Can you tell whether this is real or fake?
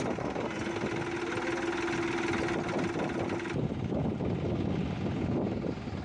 real